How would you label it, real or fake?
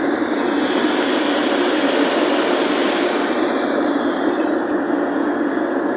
real